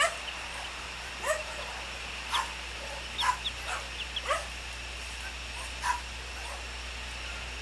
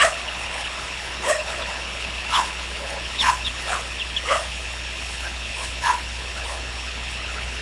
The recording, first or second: first